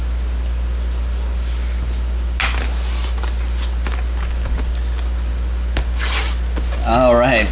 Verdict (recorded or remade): recorded